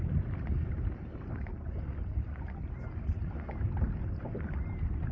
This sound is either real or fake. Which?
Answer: real